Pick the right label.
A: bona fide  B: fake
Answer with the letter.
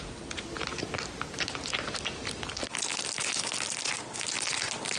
A